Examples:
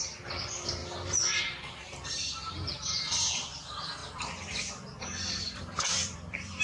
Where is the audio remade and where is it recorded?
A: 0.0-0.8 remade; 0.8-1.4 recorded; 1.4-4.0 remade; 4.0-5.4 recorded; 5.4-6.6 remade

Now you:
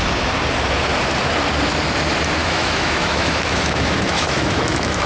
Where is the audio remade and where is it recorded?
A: 0.0-2.4 recorded; 2.4-5.1 remade

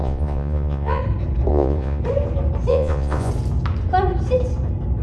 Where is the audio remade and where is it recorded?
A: 0.0-1.0 remade; 1.0-1.5 recorded; 1.5-2.0 remade; 2.0-2.7 recorded; 2.7-3.3 remade; 3.3-5.0 recorded

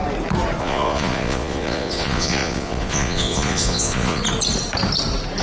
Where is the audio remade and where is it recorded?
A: 0.0-0.6 recorded; 0.6-4.2 remade; 4.2-5.4 recorded

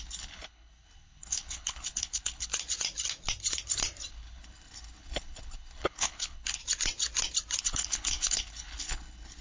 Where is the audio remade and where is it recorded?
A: 0.0-2.5 remade; 2.5-4.1 recorded; 4.1-6.6 remade; 6.6-7.6 recorded; 7.6-9.4 remade

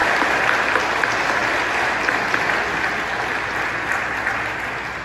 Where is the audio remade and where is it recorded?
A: 0.0-5.0 recorded

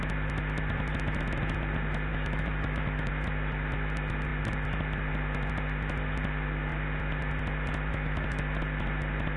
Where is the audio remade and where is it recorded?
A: 0.0-2.1 recorded; 2.1-3.1 remade; 3.1-7.9 recorded; 7.9-8.4 remade; 8.4-9.4 recorded

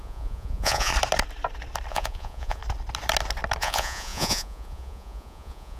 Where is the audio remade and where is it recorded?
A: 0.0-0.9 remade; 0.9-1.9 recorded; 1.9-2.6 remade; 2.6-3.6 recorded; 3.6-5.8 remade